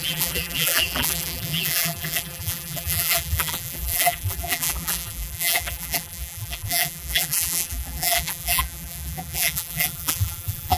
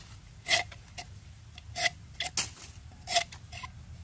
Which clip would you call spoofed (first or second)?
first